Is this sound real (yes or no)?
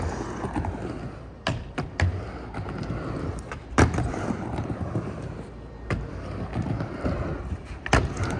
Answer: yes